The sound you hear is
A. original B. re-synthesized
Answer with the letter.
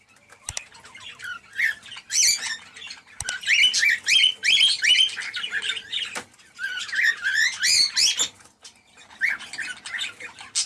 A